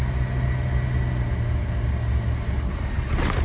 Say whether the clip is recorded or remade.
recorded